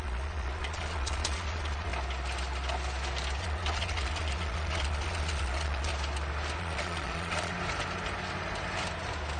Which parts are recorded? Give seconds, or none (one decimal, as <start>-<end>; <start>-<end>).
1.9-3.4; 5.9-6.6; 7.5-9.4